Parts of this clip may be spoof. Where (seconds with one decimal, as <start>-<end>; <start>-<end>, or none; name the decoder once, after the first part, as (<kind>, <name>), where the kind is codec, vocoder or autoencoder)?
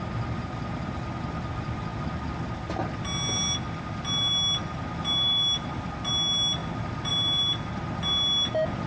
none